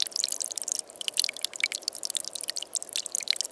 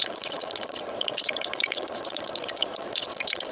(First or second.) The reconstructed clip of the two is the second